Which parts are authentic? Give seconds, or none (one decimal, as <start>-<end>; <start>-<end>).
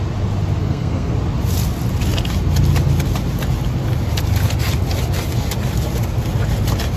0.0-0.6; 1.1-7.0